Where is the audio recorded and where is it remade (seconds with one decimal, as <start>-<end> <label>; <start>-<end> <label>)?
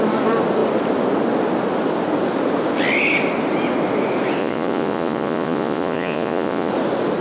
0.0-4.4 recorded; 4.4-6.7 remade; 6.7-7.2 recorded